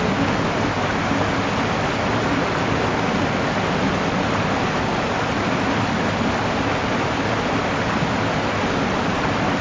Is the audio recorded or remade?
recorded